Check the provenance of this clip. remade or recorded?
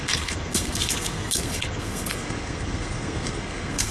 remade